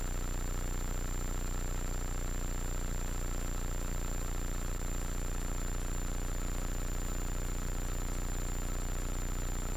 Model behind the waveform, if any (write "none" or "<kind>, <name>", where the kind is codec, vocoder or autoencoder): none